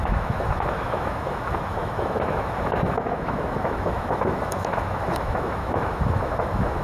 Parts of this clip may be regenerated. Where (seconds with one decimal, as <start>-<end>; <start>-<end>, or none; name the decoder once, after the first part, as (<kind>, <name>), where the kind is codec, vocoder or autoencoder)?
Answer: 0.0-6.8 (autoencoder, DAC-VAE)